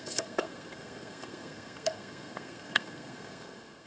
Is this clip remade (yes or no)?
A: yes